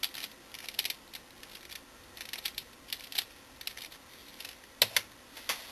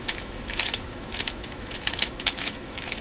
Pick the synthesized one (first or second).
second